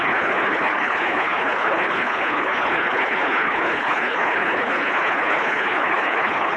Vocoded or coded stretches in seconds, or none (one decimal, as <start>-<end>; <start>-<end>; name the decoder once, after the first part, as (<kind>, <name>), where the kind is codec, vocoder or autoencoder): 0.0-6.6 (codec, HILCodec)